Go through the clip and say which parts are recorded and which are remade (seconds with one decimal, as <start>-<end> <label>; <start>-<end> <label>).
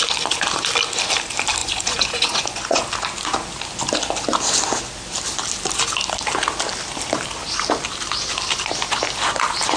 0.0-1.6 recorded; 1.6-2.8 remade; 2.8-9.8 recorded